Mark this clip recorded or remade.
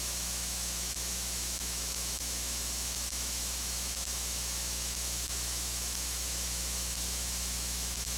remade